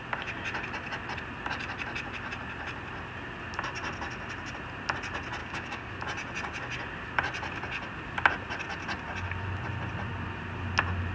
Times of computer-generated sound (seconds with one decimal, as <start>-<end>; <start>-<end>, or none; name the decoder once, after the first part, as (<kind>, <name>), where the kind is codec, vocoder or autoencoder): 5.4-5.9 (codec, DAC)